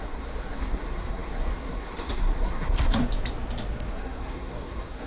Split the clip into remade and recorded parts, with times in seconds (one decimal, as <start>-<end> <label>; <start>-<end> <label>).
0.0-3.0 remade; 3.0-3.9 recorded; 3.9-5.1 remade